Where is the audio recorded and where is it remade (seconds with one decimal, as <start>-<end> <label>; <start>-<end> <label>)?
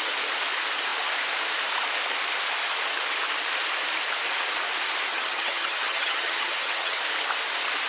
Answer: 0.0-5.1 recorded; 5.1-7.0 remade; 7.0-7.9 recorded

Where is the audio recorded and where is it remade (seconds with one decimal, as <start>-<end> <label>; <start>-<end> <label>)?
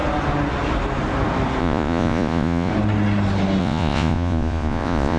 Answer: 0.0-1.6 recorded; 1.6-2.7 remade; 2.7-3.6 recorded; 3.6-5.2 remade